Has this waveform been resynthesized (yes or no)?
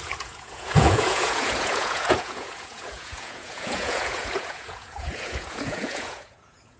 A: yes